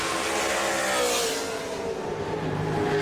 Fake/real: real